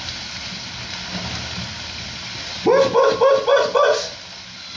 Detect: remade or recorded recorded